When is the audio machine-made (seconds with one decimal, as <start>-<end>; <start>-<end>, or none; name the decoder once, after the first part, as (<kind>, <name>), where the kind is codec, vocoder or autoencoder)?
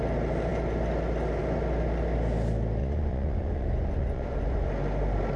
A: 2.8-4.7 (vocoder, Vocos)